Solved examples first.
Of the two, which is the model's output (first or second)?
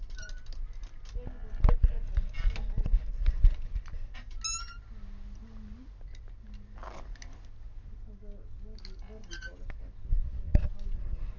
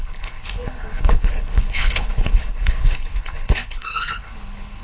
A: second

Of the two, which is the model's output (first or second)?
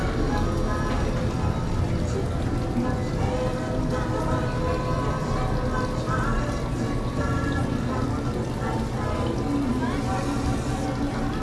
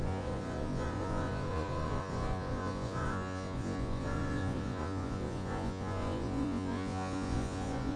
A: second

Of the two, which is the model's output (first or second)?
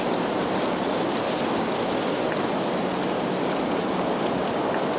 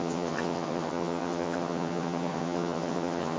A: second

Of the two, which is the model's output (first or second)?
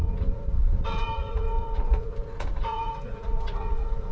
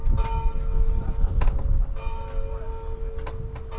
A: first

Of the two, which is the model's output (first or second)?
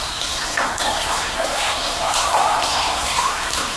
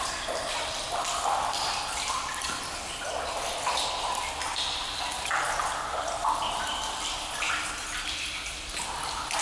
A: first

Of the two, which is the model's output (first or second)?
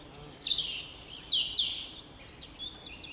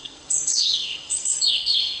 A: second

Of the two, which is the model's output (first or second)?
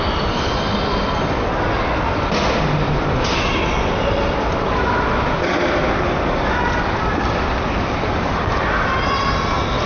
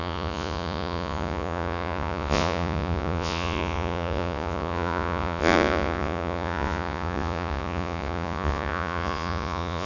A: second